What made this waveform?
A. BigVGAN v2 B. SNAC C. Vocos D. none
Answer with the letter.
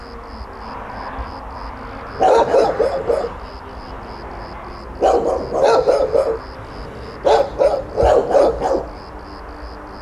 D